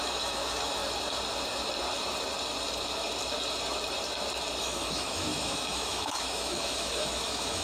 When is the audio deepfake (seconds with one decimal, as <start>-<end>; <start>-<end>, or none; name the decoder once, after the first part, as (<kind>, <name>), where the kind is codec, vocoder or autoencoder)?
0.0-0.8 (autoencoder, DAC-VAE); 4.6-7.6